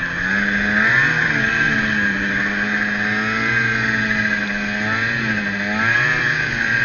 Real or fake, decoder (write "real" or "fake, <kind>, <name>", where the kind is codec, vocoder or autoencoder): real